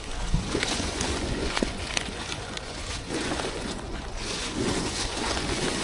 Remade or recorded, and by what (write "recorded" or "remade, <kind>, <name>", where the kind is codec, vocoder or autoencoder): remade, vocoder, Vocos